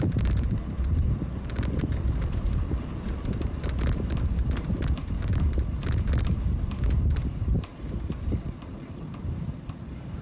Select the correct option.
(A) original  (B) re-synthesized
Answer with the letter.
B